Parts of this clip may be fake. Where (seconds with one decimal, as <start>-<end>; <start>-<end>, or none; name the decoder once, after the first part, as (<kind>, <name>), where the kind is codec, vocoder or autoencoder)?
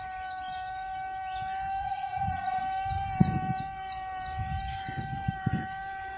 1.8-2.6 (vocoder, Vocos)